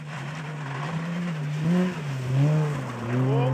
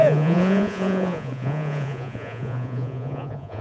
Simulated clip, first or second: second